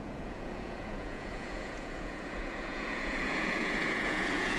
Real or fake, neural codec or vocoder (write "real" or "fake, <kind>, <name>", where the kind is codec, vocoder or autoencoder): fake, vocoder, Vocos